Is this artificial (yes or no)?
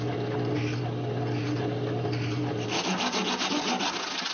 no